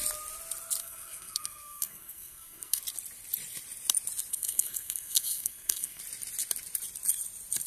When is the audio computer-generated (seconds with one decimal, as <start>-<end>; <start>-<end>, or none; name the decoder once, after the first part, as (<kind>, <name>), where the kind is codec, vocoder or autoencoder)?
0.8-2.8 (codec, SNAC); 4.3-6.0